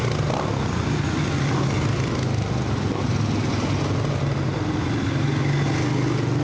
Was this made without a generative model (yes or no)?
yes